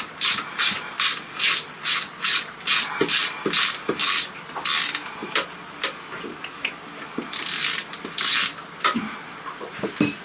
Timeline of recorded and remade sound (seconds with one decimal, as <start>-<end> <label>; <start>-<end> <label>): 0.0-3.2 remade; 3.2-4.1 recorded; 4.1-10.2 remade